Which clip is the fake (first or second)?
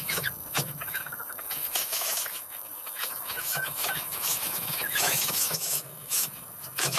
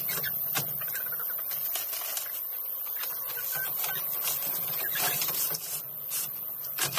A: first